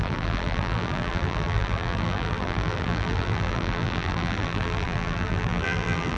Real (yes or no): no